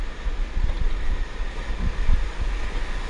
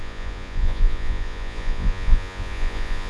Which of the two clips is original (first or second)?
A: first